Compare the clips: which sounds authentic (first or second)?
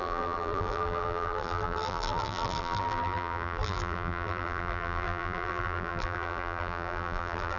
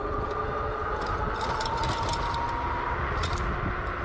second